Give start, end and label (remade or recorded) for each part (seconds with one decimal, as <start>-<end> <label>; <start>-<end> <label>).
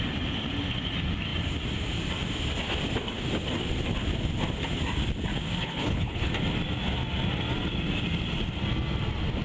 0.0-5.6 recorded; 5.6-6.3 remade; 6.3-9.4 recorded